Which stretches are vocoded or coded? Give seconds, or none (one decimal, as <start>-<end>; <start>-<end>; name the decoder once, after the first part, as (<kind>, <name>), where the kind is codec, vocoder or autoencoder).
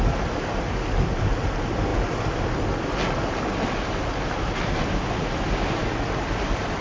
none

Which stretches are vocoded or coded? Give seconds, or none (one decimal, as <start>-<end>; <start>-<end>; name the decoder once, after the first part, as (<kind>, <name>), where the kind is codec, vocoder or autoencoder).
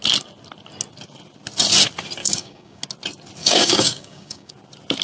2.2-2.8 (codec, DAC); 3.4-4.5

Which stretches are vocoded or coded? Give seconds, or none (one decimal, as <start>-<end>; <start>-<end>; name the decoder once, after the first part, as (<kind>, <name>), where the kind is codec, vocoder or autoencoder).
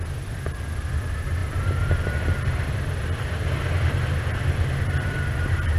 none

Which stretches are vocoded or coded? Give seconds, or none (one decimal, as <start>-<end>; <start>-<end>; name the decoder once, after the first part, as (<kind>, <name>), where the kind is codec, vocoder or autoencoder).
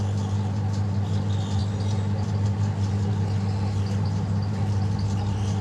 none